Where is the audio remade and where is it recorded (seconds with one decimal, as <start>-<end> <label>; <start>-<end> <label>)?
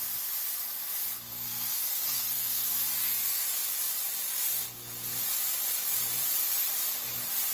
0.0-1.3 recorded; 1.3-2.8 remade; 2.8-7.5 recorded